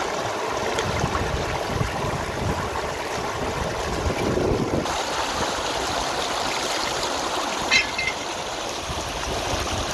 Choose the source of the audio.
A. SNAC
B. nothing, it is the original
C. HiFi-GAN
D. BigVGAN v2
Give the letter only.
D